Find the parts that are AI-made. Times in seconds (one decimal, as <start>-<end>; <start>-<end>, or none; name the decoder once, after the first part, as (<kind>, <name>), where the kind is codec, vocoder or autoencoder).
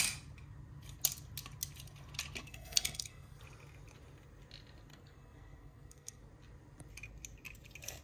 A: 2.4-3.4 (codec, SNAC); 4.9-6.2